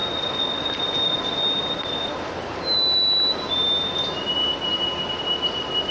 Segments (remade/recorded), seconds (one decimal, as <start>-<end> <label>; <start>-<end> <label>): 0.0-5.9 recorded